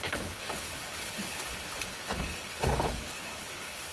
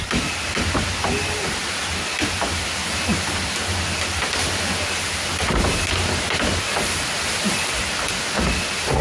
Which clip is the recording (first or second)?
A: second